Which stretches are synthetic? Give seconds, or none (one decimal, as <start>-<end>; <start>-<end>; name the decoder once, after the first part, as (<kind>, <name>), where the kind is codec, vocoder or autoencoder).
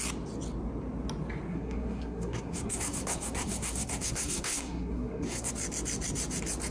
1.5-5.5 (codec, SNAC)